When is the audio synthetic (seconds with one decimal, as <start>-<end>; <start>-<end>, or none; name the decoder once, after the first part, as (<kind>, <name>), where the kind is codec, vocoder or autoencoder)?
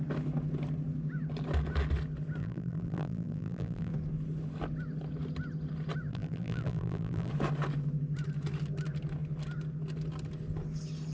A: 2.4-3.9 (vocoder, BigVGAN v2); 6.1-7.3